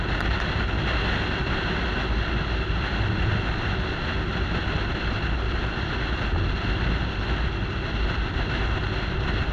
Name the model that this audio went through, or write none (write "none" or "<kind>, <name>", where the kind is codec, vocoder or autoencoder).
none